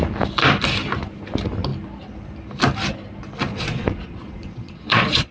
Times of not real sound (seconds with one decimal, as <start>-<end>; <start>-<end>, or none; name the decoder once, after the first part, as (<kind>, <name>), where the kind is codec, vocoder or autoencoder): 3.5-5.3 (vocoder, Vocos)